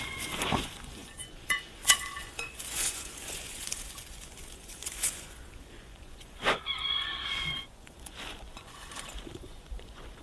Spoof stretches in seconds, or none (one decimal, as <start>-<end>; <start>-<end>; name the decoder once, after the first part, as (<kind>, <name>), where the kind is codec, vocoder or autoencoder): 0.0-10.2 (vocoder, Vocos)